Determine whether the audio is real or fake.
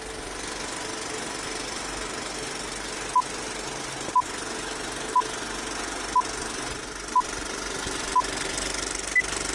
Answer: real